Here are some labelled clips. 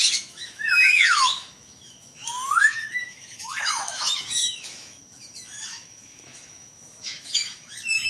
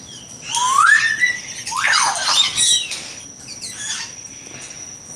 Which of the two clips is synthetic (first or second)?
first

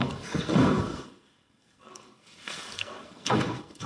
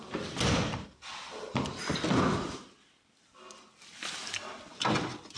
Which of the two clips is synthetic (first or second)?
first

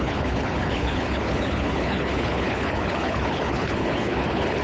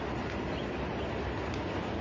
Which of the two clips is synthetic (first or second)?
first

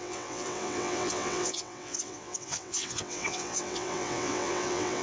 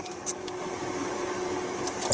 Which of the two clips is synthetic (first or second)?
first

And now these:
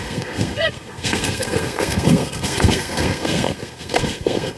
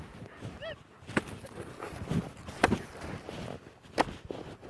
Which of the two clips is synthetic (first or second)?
first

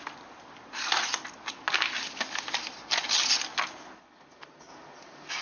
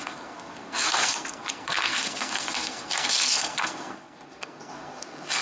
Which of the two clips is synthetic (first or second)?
second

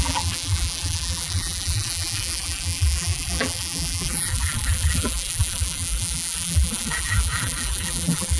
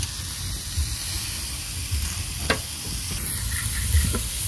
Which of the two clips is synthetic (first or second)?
first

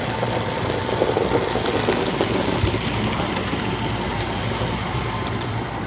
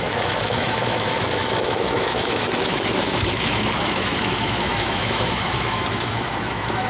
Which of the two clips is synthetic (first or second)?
second